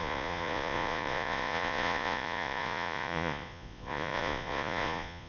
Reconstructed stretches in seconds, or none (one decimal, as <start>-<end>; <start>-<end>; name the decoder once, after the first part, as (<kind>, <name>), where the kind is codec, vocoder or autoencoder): 0.0-5.3 (vocoder, Vocos)